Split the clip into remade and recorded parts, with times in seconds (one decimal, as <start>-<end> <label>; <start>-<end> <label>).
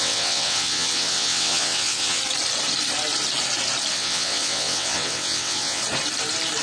0.0-2.2 remade; 2.2-3.9 recorded; 3.9-5.8 remade; 5.8-6.6 recorded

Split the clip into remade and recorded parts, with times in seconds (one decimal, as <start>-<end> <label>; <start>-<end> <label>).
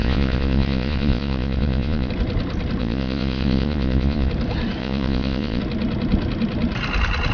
0.0-2.1 remade; 2.1-2.8 recorded; 2.8-4.3 remade; 4.3-4.8 recorded; 4.8-5.6 remade; 5.6-7.3 recorded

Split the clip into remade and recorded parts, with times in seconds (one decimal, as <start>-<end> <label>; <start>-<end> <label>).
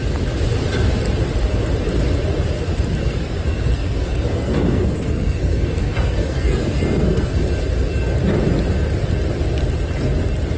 0.0-3.0 recorded; 3.0-7.4 remade; 7.4-10.6 recorded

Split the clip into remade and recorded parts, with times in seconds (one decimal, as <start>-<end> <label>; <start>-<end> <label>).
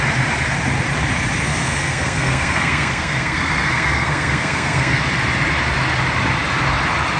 0.0-1.5 recorded; 1.5-5.0 remade; 5.0-7.2 recorded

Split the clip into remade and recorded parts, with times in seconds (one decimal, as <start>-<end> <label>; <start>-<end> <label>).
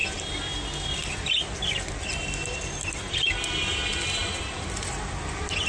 0.0-5.7 recorded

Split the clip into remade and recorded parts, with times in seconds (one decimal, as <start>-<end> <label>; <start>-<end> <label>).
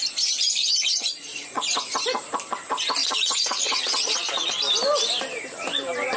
0.0-0.6 recorded; 0.6-1.6 remade; 1.6-3.0 recorded; 3.0-4.6 remade; 4.6-6.2 recorded